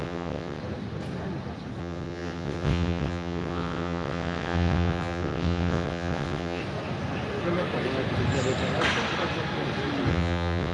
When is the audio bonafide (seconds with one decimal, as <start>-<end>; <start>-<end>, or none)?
0.6-1.8; 6.6-10.1